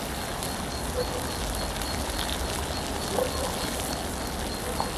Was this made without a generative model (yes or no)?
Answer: yes